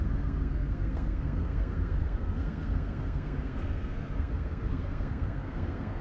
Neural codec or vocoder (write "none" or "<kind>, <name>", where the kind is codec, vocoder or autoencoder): codec, SNAC